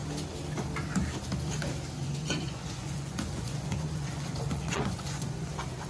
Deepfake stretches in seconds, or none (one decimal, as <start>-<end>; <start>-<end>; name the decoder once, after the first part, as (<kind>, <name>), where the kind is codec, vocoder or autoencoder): 2.0-5.5 (vocoder, Vocos)